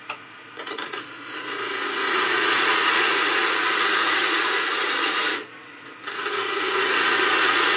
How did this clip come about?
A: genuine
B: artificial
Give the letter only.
B